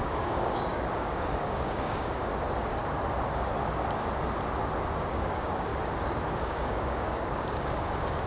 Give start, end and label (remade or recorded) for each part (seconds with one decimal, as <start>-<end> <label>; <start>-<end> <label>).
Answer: 0.0-2.3 remade; 2.3-5.1 recorded; 5.1-5.7 remade; 5.7-6.4 recorded; 6.4-8.3 remade